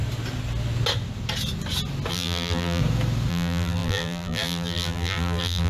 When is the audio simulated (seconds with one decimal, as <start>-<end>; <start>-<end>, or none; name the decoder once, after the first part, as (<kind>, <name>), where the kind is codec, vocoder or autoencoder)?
2.1-2.8 (vocoder, BigVGAN v2); 3.3-5.7